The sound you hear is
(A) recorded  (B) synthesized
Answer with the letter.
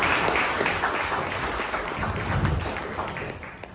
A